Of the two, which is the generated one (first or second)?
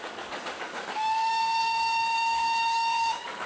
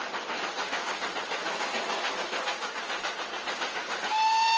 first